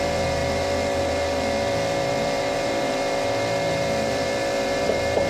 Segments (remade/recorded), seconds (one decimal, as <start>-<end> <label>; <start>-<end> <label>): 0.0-5.3 remade